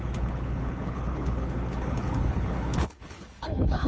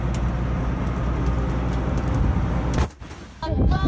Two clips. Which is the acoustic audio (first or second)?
second